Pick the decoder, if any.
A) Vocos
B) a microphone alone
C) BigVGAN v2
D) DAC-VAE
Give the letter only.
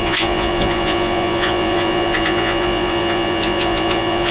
A